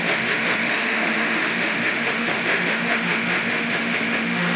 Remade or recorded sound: remade